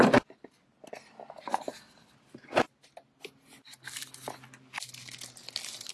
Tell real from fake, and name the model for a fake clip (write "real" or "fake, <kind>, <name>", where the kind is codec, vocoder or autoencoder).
real